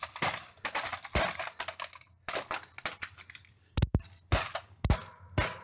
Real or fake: real